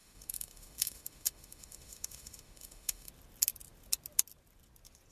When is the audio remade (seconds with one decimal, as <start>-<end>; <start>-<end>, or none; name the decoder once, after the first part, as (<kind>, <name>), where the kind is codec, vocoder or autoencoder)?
0.0-3.1 (autoencoder, DAC-VAE)